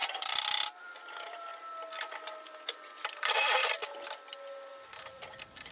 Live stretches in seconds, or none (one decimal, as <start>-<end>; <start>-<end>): 0.0-0.8; 1.5-2.7; 3.6-4.7